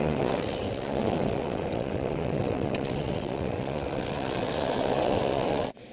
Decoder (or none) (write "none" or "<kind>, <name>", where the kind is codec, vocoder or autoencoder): vocoder, WaveNeXt